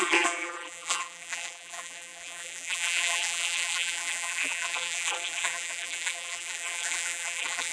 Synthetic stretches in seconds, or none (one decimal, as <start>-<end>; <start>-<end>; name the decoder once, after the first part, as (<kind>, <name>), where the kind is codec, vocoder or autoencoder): 0.0-7.7 (vocoder, BigVGAN v2)